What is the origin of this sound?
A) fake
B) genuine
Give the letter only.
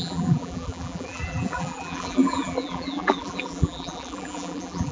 A